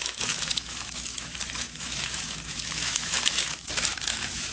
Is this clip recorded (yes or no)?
no